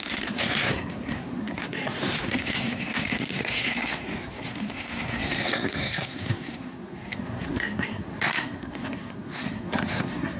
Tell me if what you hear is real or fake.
fake